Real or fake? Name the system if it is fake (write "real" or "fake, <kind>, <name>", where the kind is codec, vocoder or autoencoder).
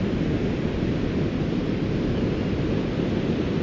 real